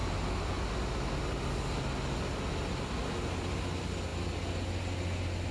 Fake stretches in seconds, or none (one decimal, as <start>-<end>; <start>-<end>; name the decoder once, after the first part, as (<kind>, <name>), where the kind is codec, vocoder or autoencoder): none

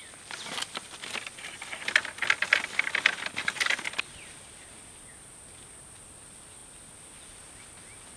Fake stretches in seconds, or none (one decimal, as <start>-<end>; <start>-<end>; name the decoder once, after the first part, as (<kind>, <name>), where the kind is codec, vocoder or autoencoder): none

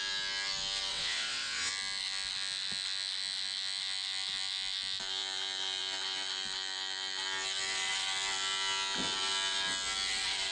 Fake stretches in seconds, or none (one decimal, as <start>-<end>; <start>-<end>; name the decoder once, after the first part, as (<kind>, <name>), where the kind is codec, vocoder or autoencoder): 0.9-1.7 (vocoder, WaveNeXt)